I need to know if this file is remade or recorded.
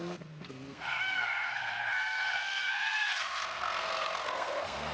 remade